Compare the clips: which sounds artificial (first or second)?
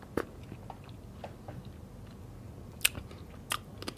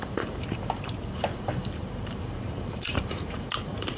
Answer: second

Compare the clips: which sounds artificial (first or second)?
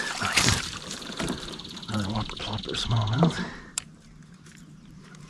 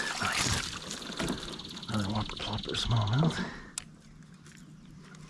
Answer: first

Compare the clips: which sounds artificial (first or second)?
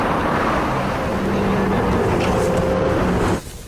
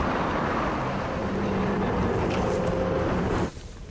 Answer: second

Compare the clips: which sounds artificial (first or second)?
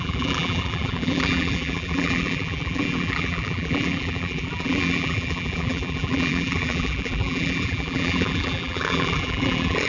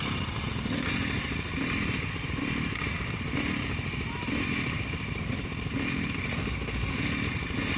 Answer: first